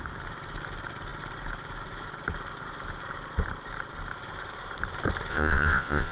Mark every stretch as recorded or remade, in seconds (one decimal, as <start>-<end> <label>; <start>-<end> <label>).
0.0-5.3 recorded; 5.3-6.1 remade